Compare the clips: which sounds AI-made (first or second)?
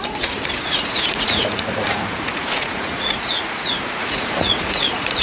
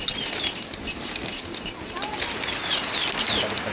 first